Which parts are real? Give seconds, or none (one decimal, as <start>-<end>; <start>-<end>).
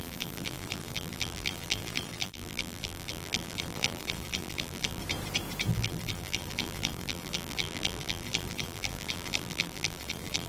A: 5.0-5.7